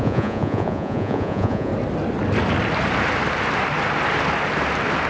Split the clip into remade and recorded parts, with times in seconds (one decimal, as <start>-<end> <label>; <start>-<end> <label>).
0.0-1.7 remade; 1.7-5.1 recorded